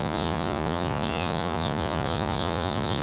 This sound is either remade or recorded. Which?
remade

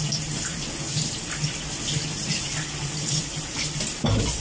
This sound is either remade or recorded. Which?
recorded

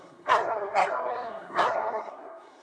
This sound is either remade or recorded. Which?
remade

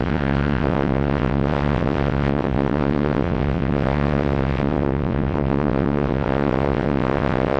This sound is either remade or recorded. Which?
remade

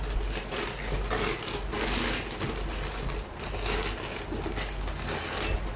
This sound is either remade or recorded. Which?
recorded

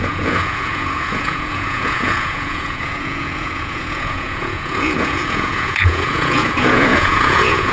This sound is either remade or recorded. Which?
remade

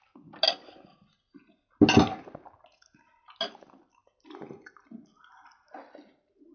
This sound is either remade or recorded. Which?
recorded